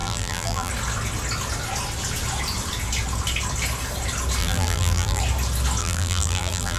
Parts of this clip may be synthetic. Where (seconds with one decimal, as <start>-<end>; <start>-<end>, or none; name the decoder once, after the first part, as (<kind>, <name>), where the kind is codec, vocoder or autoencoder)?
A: 0.0-0.7 (vocoder, BigVGAN v2); 4.4-5.2; 5.8-6.8

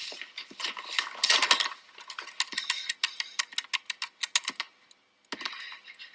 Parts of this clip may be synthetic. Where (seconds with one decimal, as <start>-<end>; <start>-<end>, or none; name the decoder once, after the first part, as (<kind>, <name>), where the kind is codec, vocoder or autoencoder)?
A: none

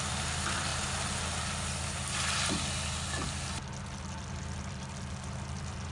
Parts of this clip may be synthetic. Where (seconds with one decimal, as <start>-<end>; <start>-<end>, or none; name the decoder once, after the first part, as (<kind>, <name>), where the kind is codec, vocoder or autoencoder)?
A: 0.0-0.7 (vocoder, BigVGAN v2); 4.2-5.9

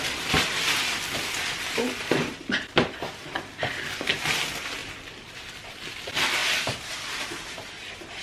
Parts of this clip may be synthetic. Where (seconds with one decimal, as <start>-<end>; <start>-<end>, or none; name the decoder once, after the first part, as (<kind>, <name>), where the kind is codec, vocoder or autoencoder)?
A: 4.8-5.4 (vocoder, BigVGAN v2)

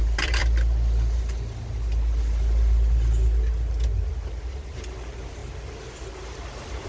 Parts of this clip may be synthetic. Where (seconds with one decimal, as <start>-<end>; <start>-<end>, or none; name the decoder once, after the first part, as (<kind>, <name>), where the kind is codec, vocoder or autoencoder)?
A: 0.0-0.4 (vocoder, BigVGAN v2); 4.5-5.4

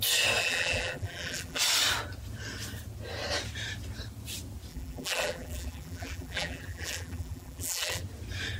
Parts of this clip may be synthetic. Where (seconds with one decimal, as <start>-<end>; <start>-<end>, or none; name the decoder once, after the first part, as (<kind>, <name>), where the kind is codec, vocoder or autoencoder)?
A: 0.4-1.6 (vocoder, BigVGAN v2); 4.7-8.0

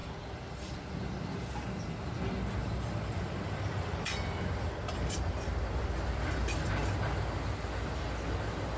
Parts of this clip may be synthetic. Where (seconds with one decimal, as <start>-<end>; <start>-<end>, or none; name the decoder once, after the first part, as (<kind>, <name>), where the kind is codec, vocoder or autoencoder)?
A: 0.0-0.8 (vocoder, BigVGAN v2); 2.6-6.7

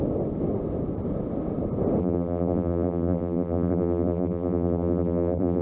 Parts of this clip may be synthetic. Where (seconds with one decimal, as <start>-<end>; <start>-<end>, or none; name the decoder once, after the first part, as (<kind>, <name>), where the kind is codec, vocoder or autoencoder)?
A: 2.0-5.6 (vocoder, BigVGAN v2)